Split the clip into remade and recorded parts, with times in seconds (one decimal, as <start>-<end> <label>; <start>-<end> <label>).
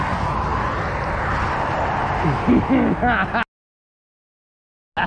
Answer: 0.0-5.1 recorded